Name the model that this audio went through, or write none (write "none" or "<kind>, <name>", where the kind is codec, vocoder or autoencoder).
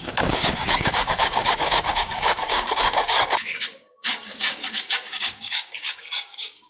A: codec, DAC